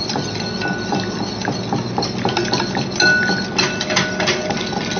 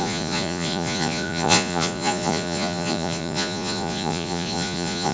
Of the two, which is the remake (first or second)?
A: second